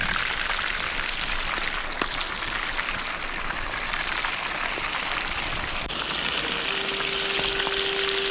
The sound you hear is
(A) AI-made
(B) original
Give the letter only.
B